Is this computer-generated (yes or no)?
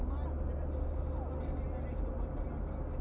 no